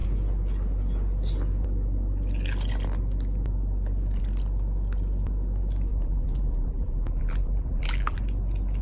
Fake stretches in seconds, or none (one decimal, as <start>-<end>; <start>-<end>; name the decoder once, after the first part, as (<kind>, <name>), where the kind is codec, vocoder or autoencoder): 5.9-8.2 (vocoder, BigVGAN v2)